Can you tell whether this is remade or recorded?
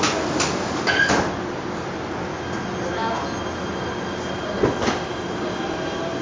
recorded